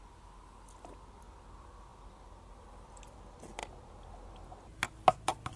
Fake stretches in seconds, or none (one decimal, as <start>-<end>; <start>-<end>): none